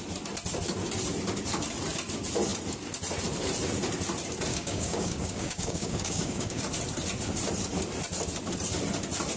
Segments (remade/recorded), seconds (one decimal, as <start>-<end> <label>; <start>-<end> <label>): 0.0-4.5 recorded; 4.5-6.6 remade; 6.6-9.4 recorded